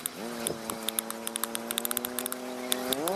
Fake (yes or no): no